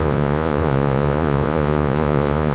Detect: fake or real fake